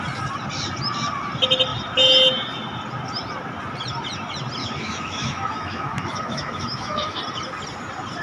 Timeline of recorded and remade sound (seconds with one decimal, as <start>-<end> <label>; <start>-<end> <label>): 0.0-4.6 recorded; 4.6-7.2 remade; 7.2-8.2 recorded